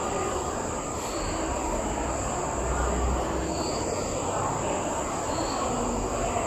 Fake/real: real